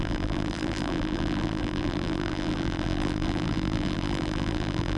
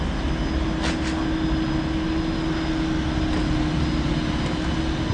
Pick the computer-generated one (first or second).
first